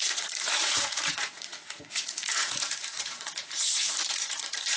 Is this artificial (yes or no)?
yes